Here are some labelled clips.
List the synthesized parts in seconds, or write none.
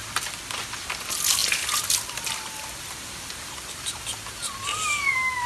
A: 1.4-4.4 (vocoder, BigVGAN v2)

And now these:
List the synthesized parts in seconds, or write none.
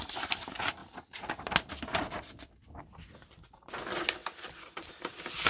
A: 0.0-0.8 (vocoder, BigVGAN v2); 1.3-1.9; 2.8-4.2; 4.9-5.5